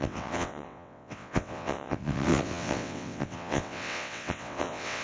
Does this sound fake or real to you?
fake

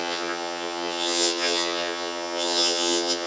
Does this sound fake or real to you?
fake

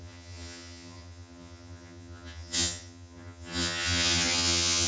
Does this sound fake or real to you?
fake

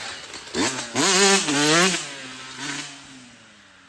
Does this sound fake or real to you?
real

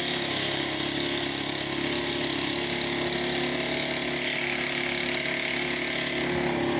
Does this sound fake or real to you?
real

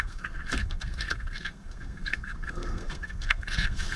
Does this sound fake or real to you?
fake